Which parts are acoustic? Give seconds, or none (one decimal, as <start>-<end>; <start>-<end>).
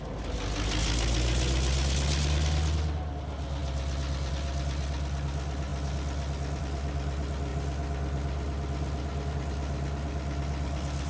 0.0-11.1